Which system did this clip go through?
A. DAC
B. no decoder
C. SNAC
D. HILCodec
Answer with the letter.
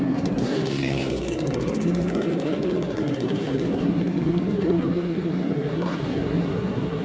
C